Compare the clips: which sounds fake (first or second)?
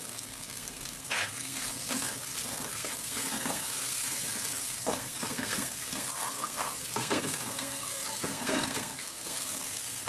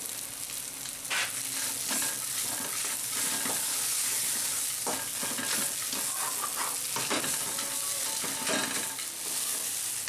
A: first